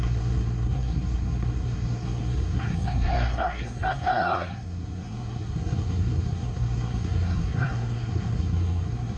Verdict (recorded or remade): remade